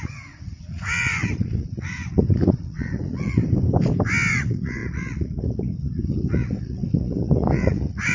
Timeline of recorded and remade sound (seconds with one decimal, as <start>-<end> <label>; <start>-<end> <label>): 0.0-3.4 remade; 3.4-4.3 recorded; 4.3-8.1 remade